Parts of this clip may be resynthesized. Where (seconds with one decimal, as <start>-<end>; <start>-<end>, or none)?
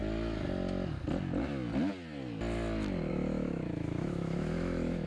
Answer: 3.1-5.1